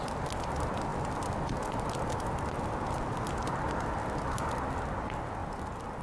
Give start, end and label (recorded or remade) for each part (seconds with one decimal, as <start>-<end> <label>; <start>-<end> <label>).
0.0-6.0 recorded